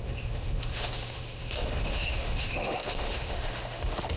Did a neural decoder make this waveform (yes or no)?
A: yes